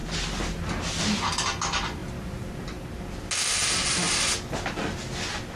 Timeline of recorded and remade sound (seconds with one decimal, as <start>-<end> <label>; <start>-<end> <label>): 0.0-5.6 recorded